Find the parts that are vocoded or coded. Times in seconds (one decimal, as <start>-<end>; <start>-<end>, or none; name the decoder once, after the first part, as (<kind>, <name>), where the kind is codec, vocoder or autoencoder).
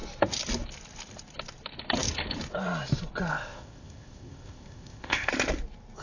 3.3-5.3 (codec, ZipCodec)